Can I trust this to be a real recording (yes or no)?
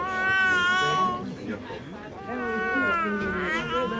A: yes